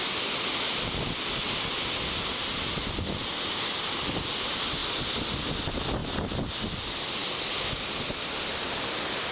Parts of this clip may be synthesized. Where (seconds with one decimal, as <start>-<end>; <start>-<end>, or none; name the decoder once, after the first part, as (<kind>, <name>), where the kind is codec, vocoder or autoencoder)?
none